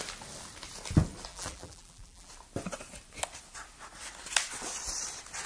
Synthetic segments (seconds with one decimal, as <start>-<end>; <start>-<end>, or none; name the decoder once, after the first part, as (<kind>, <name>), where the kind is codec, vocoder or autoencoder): 1.3-2.3 (vocoder, BigVGAN v2)